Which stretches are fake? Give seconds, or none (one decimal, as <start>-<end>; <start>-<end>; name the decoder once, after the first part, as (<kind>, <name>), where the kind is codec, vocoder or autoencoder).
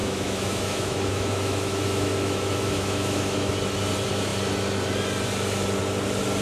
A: 0.0-3.5 (autoencoder, DAC-VAE)